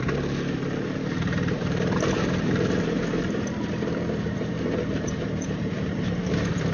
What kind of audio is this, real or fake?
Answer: fake